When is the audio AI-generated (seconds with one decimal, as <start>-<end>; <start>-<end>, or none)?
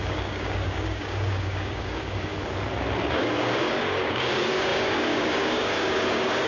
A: 0.0-2.3; 3.1-6.5